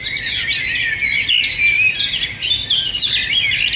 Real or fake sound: real